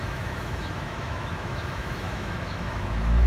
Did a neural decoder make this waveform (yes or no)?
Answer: yes